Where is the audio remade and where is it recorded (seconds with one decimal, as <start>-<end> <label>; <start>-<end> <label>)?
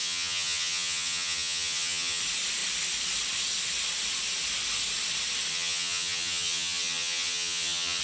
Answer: 0.0-2.2 remade; 2.2-5.5 recorded; 5.5-8.0 remade